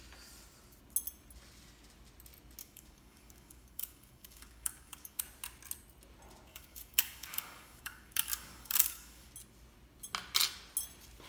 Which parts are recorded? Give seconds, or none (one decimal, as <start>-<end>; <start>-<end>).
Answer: 0.0-2.6; 5.2-6.5; 9.3-11.3